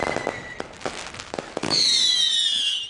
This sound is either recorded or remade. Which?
recorded